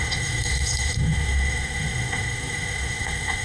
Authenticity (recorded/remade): remade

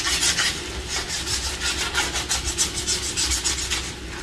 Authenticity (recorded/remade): recorded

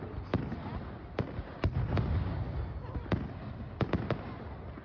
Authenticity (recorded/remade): recorded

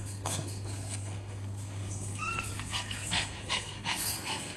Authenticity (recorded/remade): remade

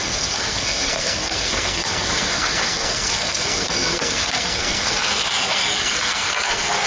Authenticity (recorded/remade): remade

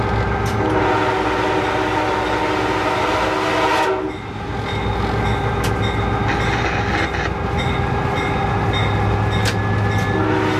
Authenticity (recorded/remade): recorded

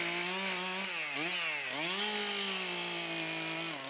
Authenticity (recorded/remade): recorded